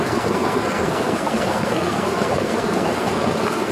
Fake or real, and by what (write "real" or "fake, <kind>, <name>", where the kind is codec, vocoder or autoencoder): fake, codec, SNAC